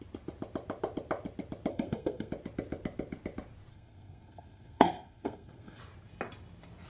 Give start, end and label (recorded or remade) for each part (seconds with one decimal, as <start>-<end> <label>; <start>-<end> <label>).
0.0-1.7 recorded; 1.7-2.3 remade; 2.3-3.7 recorded; 3.7-5.8 remade; 5.8-6.9 recorded